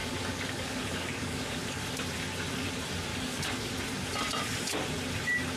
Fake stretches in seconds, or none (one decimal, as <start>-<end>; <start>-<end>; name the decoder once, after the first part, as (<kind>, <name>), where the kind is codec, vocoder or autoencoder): 0.0-1.9 (codec, DAC); 3.1-3.7